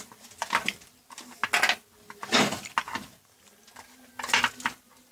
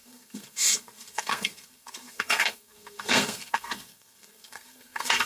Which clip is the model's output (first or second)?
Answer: second